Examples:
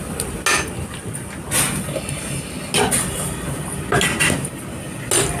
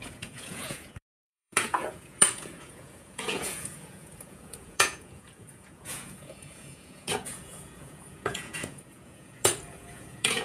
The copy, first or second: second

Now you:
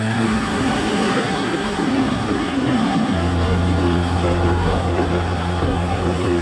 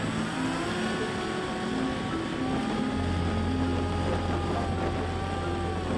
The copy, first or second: first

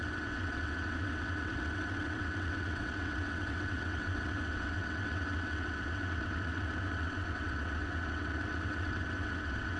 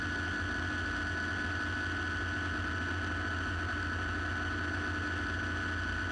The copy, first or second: first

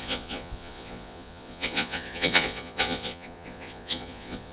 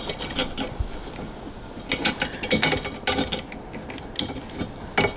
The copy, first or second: first